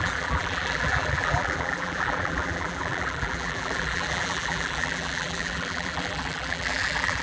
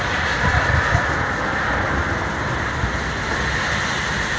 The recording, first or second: second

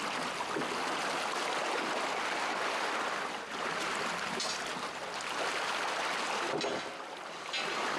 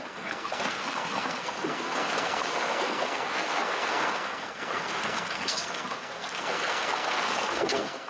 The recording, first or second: first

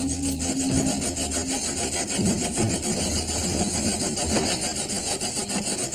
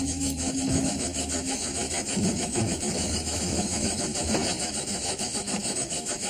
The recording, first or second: first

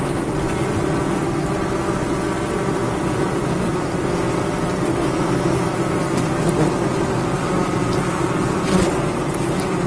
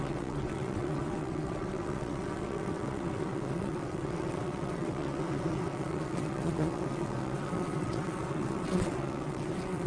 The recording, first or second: first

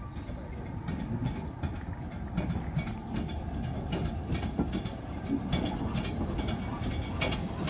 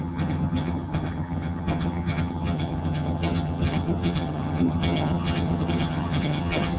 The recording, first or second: first